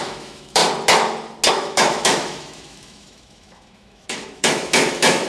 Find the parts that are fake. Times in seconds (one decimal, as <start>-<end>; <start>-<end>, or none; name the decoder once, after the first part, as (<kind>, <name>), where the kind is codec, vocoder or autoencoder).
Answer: 0.0-0.6 (autoencoder, DAC-VAE); 1.5-5.3